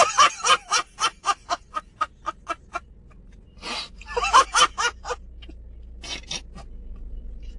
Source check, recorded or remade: recorded